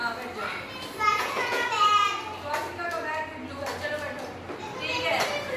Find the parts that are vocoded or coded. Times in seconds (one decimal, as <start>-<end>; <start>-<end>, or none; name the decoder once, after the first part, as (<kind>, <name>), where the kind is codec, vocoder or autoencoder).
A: 1.1-1.7 (vocoder, Vocos)